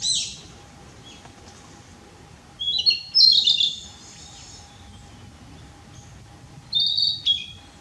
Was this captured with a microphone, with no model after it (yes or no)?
yes